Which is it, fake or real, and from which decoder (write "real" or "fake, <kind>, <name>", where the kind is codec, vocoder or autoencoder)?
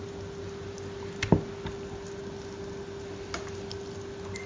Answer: real